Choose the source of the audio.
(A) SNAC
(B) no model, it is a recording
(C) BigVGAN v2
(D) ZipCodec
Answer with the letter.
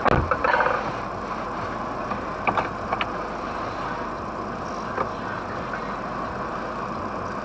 B